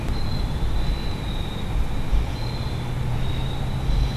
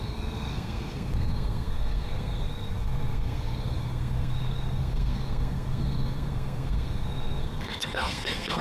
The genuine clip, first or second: first